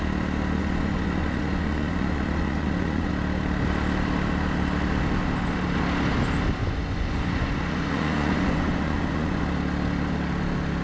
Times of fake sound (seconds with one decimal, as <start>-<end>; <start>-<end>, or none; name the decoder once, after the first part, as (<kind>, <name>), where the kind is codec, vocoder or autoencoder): 0.6-3.1 (vocoder, Vocos); 6.6-9.4